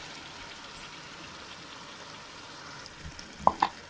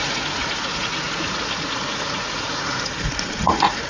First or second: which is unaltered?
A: first